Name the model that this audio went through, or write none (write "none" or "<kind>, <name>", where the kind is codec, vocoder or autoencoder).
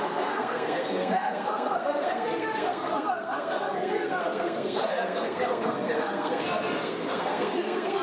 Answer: codec, SNAC